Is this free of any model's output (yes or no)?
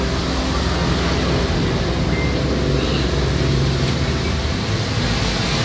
yes